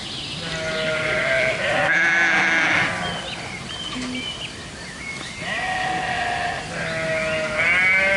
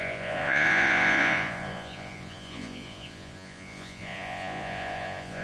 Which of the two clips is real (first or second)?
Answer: first